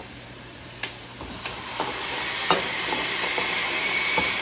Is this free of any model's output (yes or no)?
no